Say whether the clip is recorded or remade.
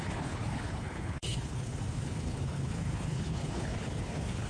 remade